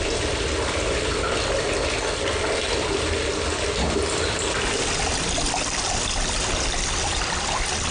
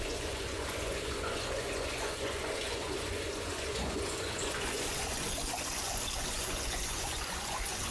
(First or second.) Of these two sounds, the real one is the first